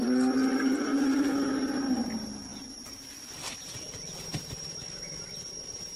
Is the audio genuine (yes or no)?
yes